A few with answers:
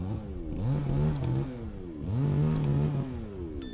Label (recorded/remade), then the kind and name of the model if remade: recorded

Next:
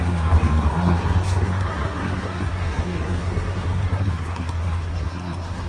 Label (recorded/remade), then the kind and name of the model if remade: remade, codec, SNAC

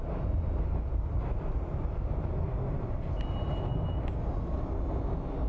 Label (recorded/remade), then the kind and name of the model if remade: recorded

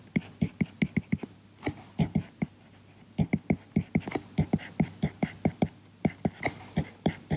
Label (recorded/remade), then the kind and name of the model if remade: recorded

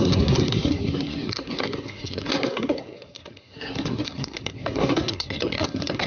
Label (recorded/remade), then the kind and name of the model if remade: remade, codec, SNAC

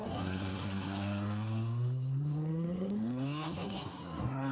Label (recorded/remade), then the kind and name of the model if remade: remade, codec, SNAC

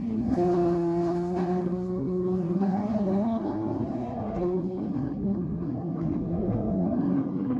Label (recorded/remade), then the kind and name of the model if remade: remade, codec, SNAC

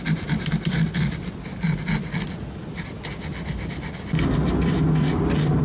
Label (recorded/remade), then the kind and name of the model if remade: recorded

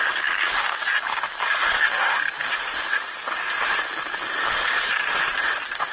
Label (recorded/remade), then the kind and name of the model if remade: recorded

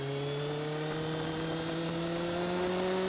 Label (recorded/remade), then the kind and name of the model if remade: recorded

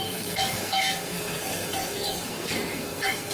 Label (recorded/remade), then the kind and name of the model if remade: remade, codec, SNAC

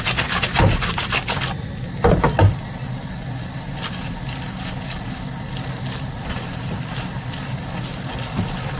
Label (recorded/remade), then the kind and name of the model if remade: recorded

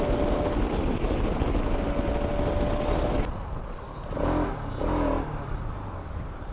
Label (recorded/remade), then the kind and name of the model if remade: recorded